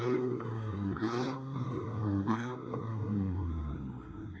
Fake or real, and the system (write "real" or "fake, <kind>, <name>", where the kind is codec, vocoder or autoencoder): fake, codec, SNAC